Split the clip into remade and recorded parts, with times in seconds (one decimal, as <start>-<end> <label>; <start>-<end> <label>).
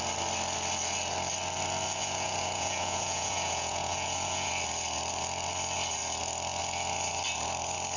0.0-2.0 recorded; 2.0-4.5 remade; 4.5-8.0 recorded